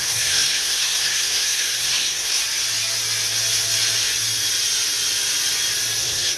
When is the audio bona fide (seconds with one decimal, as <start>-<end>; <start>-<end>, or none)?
2.4-6.0